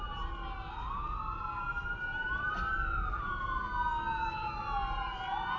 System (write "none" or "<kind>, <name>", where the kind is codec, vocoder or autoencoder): none